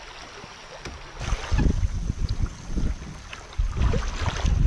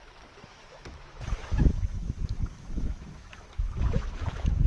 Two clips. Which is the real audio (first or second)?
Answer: first